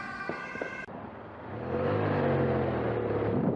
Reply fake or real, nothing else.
real